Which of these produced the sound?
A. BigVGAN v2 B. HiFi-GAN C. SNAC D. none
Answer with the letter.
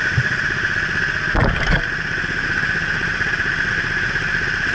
D